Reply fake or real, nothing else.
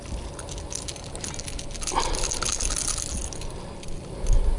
real